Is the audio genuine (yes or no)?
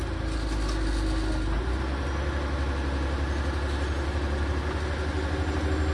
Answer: yes